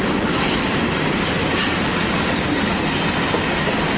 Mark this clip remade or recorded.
recorded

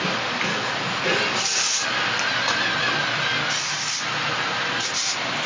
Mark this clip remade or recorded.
recorded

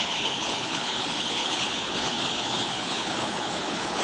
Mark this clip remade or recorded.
remade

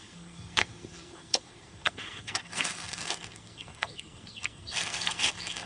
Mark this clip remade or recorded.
remade